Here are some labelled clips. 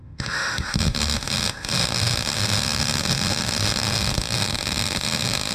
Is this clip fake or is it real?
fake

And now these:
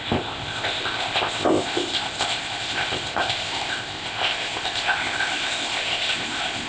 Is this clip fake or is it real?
fake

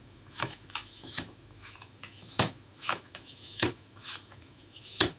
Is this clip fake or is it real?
fake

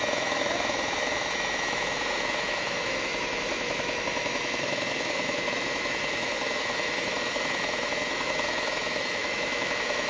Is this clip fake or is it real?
fake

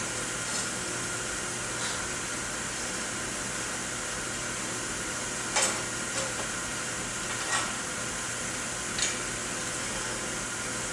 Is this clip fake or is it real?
real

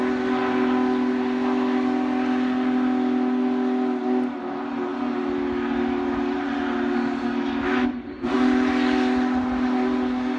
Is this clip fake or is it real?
real